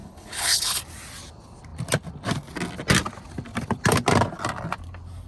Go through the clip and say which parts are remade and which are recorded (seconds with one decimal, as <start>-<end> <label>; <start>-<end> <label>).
0.0-0.8 remade; 0.8-5.3 recorded